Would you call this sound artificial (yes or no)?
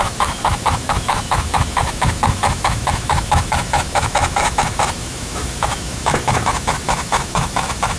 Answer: yes